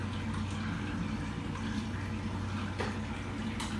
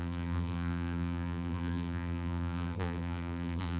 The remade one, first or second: second